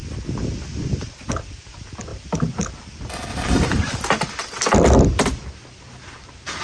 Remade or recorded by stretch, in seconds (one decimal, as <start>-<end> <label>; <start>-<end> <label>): 0.0-3.3 recorded; 3.3-4.1 remade; 4.1-6.6 recorded